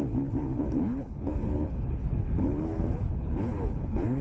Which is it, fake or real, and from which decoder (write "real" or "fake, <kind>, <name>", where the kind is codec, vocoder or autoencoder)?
fake, codec, HILCodec